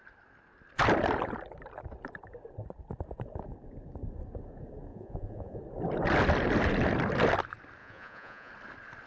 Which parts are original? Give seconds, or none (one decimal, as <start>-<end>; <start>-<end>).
0.0-4.9; 5.6-7.8; 8.5-9.1